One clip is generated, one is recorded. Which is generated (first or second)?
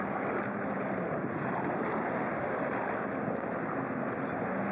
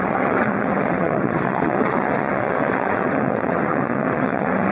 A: second